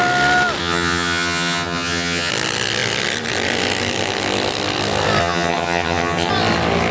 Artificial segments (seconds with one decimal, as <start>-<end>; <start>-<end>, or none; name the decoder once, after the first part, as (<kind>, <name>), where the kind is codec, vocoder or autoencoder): 0.6-2.3 (vocoder, HiFi-GAN); 5.2-6.3